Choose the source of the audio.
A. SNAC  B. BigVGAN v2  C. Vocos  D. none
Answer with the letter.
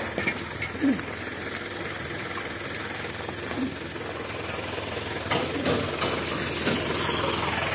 D